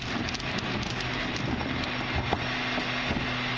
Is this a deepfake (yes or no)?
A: no